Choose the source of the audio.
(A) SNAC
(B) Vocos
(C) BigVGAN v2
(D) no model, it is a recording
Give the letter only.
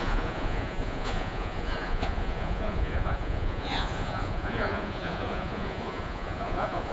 B